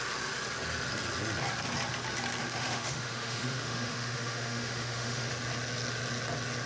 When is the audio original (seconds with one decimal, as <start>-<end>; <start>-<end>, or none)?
0.0-2.4; 5.3-6.7